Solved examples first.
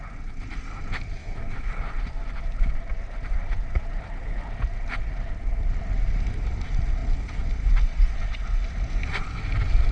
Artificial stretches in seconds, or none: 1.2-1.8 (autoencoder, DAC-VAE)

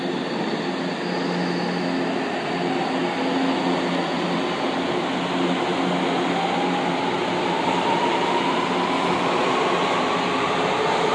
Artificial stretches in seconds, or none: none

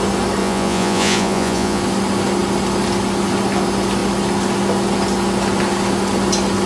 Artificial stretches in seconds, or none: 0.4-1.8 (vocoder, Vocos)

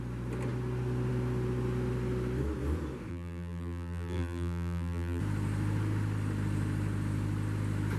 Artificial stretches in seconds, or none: 3.1-5.2 (vocoder, BigVGAN v2)

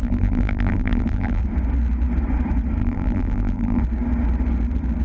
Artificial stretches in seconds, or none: 0.0-1.4 (vocoder, BigVGAN v2); 2.8-3.8

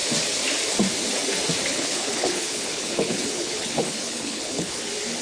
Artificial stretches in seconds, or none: 1.7-4.8 (codec, HILCodec)

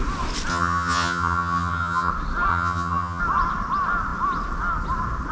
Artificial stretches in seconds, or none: 0.5-2.1 (vocoder, HiFi-GAN); 2.5-3.2

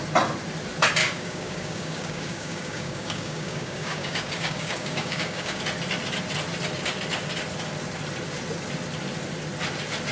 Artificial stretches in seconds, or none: 1.0-5.6 (codec, DAC)